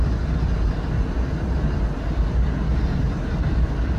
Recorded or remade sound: recorded